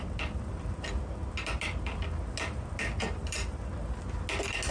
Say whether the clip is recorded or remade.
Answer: recorded